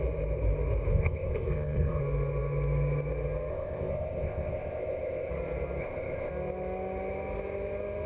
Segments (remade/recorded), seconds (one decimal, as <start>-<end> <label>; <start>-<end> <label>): 0.0-0.9 recorded; 0.9-2.0 remade; 2.0-3.5 recorded; 3.5-5.3 remade; 5.3-5.8 recorded; 5.8-6.3 remade; 6.3-8.1 recorded